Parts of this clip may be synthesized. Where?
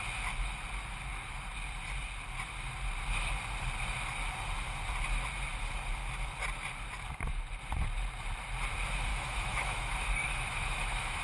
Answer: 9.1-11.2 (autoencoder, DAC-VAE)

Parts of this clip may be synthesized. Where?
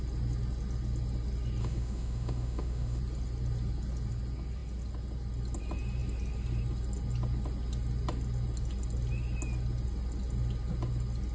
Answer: 1.6-3.0 (autoencoder, DAC-VAE)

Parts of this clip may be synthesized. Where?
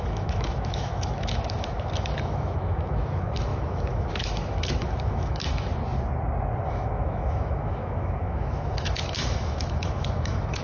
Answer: 0.0-5.7 (autoencoder, DAC-VAE); 6.7-10.6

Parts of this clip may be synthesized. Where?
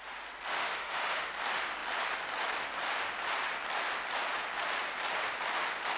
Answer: 0.6-1.3 (autoencoder, DAC-VAE)